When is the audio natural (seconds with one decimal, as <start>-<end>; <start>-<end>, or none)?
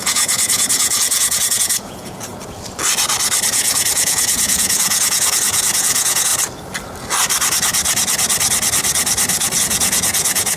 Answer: 2.3-3.5; 6.3-9.6